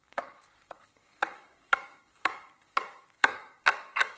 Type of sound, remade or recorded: remade